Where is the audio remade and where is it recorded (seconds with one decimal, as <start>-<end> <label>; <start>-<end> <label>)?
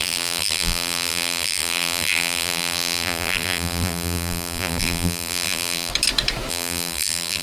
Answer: 0.0-5.9 remade; 5.9-6.5 recorded; 6.5-7.4 remade